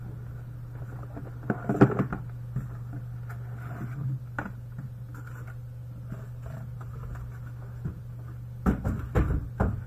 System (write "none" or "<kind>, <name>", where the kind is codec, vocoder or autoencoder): none